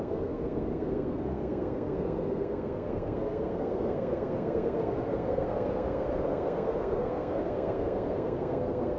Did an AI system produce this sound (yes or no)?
yes